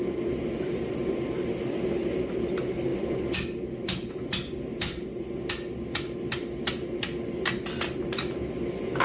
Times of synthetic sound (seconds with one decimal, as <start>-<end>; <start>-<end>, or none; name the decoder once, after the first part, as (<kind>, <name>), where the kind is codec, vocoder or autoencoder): none